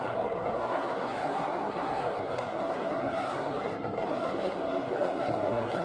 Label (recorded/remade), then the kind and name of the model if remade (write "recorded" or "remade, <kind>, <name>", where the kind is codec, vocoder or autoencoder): remade, codec, SNAC